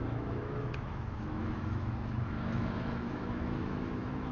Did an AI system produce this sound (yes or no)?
yes